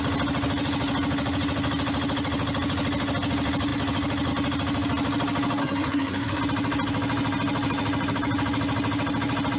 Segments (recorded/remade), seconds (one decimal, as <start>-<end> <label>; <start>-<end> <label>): 0.0-5.6 recorded; 5.6-6.4 remade; 6.4-9.6 recorded